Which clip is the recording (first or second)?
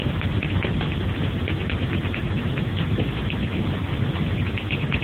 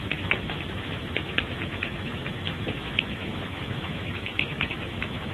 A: first